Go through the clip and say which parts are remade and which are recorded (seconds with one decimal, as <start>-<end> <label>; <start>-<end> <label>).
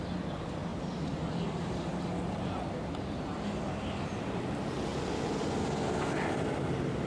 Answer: 0.0-7.1 recorded